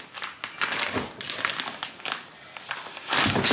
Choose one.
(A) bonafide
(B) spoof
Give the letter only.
A